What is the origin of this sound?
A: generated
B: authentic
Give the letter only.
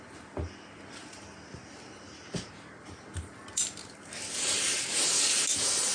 B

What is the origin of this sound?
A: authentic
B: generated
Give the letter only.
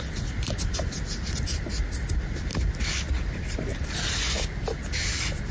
A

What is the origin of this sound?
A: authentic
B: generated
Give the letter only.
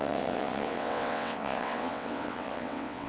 B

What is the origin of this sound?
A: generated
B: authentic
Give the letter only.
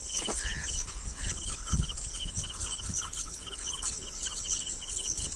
A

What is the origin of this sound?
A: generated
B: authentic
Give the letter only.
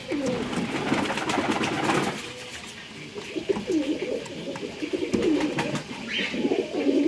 B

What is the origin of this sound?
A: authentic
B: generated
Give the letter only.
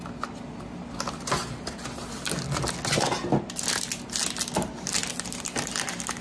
A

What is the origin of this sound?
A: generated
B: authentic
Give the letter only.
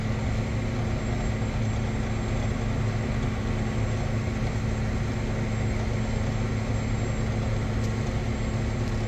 B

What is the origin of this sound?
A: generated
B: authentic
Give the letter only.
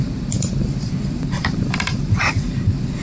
A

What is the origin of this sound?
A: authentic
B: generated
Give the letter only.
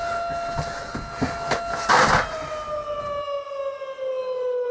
A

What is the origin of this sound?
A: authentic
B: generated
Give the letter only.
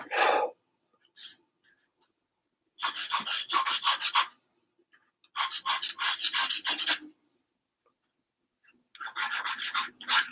A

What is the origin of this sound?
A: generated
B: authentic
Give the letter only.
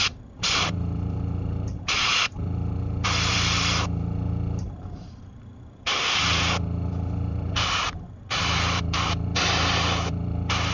A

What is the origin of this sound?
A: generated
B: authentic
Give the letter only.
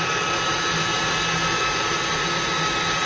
B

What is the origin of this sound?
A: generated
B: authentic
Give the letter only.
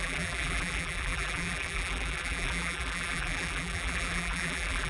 A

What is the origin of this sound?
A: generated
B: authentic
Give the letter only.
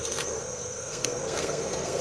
A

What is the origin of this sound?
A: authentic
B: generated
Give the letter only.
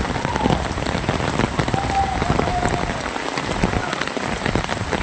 A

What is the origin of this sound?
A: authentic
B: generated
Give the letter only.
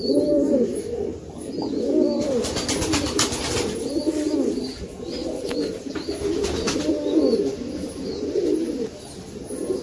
A